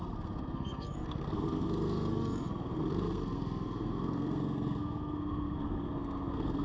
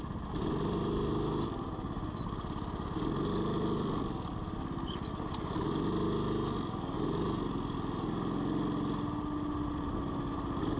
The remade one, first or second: first